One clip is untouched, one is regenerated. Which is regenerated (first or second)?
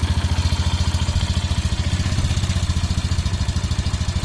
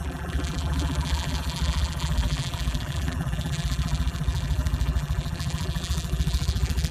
second